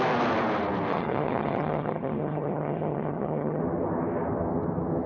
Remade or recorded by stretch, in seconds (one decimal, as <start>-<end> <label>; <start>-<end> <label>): 0.0-0.9 recorded; 0.9-3.6 remade; 3.6-5.1 recorded